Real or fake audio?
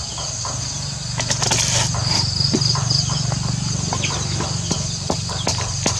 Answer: real